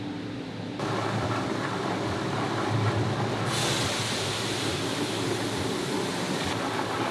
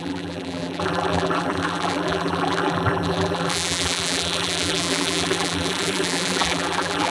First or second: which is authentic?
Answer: first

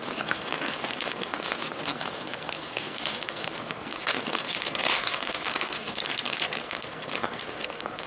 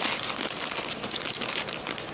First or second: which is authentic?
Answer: second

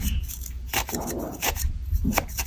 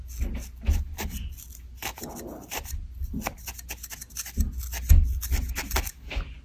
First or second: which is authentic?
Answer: second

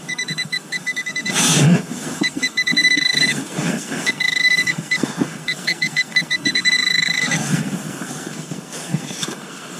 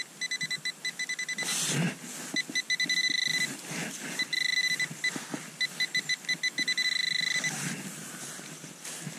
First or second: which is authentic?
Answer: second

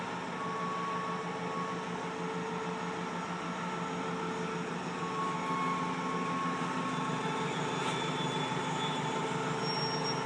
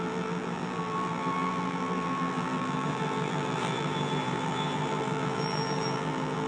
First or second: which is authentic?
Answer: first